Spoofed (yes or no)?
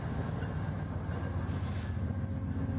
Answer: no